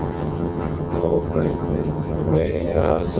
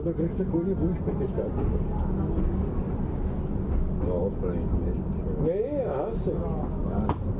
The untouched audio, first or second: second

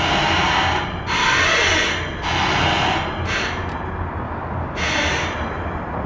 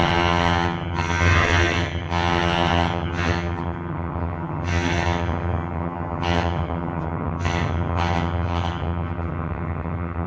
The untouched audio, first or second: first